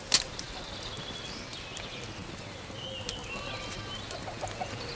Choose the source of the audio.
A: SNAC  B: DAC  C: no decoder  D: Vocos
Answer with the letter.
C